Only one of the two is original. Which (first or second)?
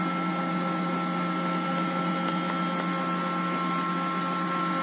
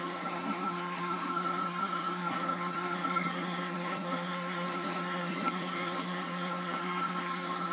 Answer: first